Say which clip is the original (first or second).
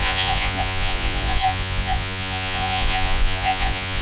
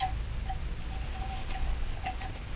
second